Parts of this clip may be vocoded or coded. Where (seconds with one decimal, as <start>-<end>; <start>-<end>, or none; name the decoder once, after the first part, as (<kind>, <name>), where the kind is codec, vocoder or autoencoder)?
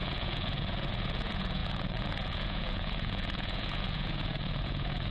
0.0-5.1 (vocoder, Vocos)